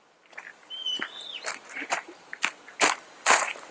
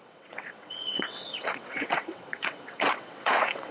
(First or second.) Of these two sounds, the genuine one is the first